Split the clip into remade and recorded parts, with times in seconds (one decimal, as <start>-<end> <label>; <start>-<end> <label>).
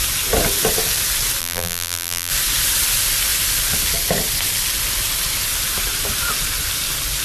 0.0-1.4 recorded; 1.4-2.3 remade; 2.3-7.2 recorded